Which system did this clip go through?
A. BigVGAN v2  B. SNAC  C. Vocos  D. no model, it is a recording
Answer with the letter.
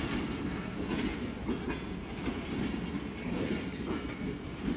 A